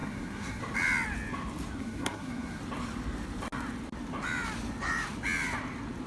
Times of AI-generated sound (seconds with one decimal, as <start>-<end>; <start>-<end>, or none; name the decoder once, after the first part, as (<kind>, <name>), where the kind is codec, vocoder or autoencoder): 0.0-0.6 (codec, SNAC); 1.8-2.6